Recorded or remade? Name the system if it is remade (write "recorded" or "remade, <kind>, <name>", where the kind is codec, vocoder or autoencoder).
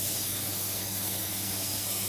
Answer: remade, codec, SNAC